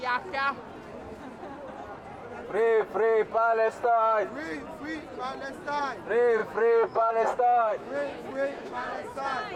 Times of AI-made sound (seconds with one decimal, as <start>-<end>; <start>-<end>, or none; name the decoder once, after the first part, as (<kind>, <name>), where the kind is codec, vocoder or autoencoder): 6.4-7.1 (autoencoder, DAC-VAE); 7.7-9.2